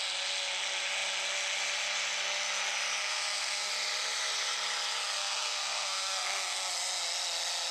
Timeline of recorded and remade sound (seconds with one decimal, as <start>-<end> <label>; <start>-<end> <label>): 0.0-3.0 recorded; 3.0-3.7 remade; 3.7-5.2 recorded; 5.2-6.7 remade; 6.7-7.7 recorded